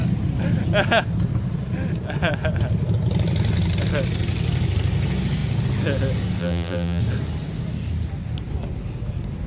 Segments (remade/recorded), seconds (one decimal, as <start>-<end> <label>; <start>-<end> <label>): 0.0-6.4 recorded; 6.4-7.0 remade; 7.0-9.5 recorded